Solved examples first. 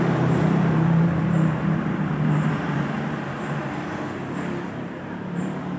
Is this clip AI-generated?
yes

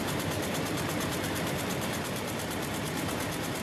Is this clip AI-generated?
yes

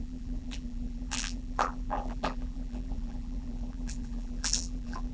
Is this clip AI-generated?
yes